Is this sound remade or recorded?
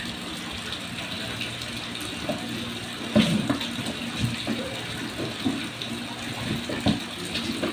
recorded